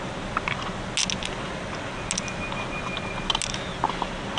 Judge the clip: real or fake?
real